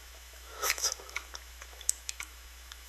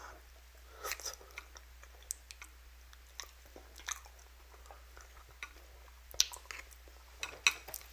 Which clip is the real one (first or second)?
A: second